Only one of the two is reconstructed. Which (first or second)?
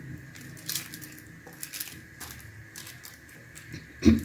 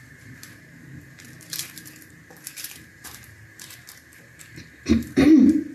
second